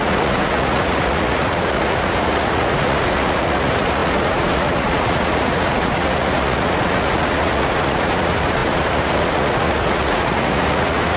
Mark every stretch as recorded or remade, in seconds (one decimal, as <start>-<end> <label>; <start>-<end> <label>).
0.0-11.2 remade